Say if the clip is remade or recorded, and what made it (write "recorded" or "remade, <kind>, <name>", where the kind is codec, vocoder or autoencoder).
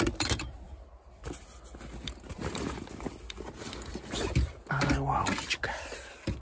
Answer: recorded